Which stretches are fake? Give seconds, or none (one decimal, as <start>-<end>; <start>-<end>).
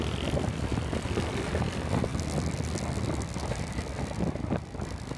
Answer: none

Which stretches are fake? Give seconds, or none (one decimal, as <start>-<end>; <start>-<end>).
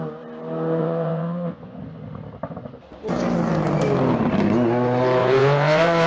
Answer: 0.8-1.8; 5.2-6.1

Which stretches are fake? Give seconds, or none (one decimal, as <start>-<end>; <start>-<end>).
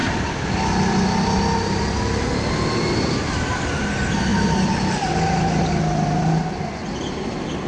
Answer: none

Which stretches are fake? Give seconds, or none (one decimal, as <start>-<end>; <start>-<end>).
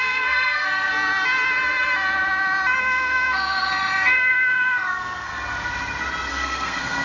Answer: 0.0-0.9; 2.8-5.3; 6.3-7.0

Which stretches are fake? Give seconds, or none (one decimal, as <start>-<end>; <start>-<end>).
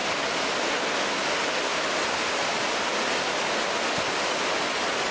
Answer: none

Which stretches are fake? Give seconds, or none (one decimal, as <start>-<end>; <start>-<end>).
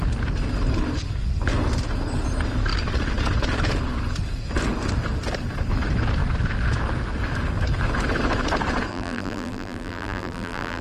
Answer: 8.9-10.8